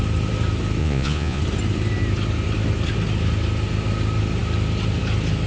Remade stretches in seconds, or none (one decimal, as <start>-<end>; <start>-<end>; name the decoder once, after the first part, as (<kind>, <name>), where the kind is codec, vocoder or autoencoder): 0.8-1.4 (vocoder, Vocos)